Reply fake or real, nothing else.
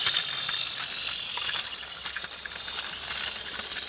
real